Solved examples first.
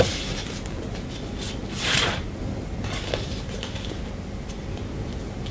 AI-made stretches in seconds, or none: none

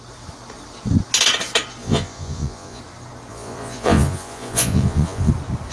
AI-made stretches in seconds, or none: 1.8-2.8 (vocoder, Vocos); 3.3-5.3

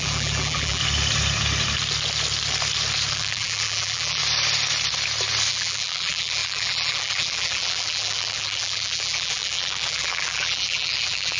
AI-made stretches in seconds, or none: 0.0-0.8 (vocoder, BigVGAN v2); 3.1-4.2; 5.5-11.4

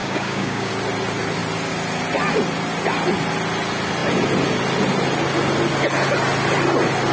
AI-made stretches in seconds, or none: 0.0-0.7 (codec, DAC)

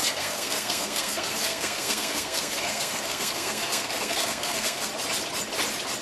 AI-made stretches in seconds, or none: 0.0-4.9 (codec, SNAC)